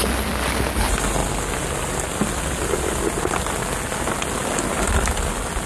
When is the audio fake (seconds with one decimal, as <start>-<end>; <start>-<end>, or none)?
none